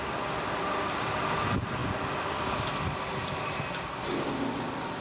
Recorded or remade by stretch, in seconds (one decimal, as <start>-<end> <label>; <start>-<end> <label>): 0.0-5.0 recorded

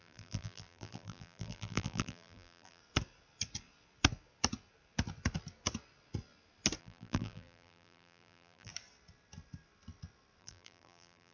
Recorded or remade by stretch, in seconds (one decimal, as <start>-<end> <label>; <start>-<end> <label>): 0.0-2.8 remade; 2.8-6.8 recorded; 6.8-8.7 remade; 8.7-10.4 recorded; 10.4-11.3 remade

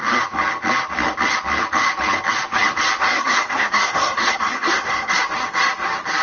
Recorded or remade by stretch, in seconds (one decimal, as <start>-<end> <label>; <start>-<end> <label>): 0.0-3.1 recorded; 3.1-5.1 remade; 5.1-6.2 recorded